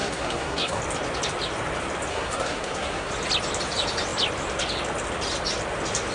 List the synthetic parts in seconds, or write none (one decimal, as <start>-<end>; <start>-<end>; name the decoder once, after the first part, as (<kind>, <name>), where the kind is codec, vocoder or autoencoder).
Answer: 0.0-0.8 (codec, SNAC); 2.1-3.1